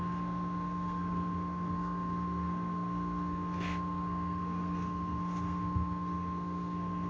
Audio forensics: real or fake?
fake